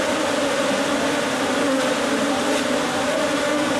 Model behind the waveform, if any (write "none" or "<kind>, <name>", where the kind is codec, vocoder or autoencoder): none